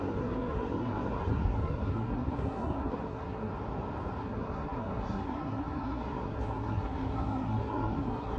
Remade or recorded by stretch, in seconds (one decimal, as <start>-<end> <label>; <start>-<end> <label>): 0.0-3.5 remade; 3.5-4.2 recorded; 4.2-8.4 remade